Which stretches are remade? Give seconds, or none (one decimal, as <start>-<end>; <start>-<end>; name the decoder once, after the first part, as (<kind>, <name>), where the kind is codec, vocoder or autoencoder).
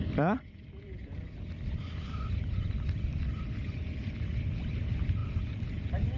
none